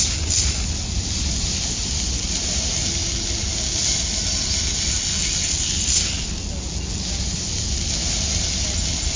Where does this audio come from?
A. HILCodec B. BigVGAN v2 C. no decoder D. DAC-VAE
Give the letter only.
C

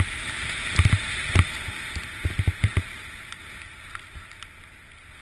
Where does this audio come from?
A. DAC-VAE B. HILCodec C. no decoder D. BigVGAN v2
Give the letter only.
C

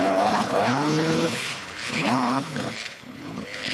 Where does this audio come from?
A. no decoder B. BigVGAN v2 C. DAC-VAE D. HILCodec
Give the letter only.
D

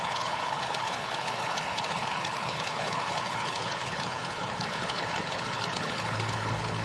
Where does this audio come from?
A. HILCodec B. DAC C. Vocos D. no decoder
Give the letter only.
A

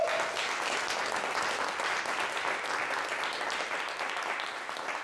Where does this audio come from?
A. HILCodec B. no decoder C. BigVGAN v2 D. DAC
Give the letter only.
B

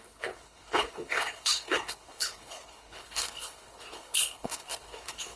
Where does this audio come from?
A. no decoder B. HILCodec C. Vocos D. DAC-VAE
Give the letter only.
B